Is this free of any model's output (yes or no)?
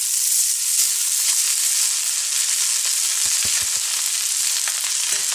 yes